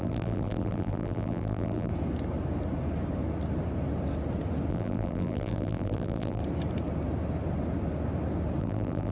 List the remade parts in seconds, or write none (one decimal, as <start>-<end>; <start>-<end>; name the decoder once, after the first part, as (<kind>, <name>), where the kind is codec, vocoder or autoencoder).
0.0-1.9 (vocoder, BigVGAN v2); 4.7-6.4; 8.6-9.1